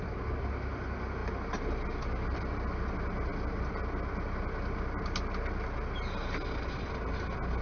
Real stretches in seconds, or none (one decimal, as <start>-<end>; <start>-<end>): 0.0-7.6